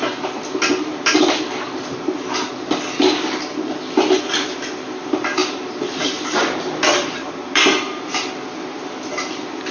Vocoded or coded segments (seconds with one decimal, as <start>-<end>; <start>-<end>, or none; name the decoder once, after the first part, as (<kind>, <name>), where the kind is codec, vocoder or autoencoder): 5.4-8.0 (vocoder, BigVGAN v2)